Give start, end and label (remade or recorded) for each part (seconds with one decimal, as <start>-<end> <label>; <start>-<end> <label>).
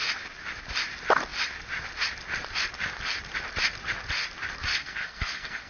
0.0-4.7 recorded; 4.7-5.7 remade